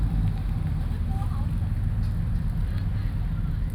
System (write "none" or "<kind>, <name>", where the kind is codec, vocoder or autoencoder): none